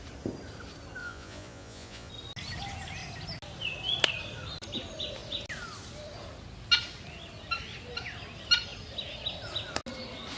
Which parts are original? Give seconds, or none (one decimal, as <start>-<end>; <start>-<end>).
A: 0.0-1.0; 2.1-10.4